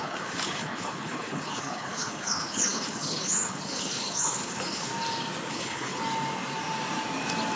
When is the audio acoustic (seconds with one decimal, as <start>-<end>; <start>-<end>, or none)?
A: 4.9-5.5; 6.0-7.6